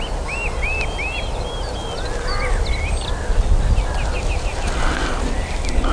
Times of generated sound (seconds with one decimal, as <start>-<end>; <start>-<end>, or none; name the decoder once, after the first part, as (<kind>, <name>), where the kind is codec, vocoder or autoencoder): none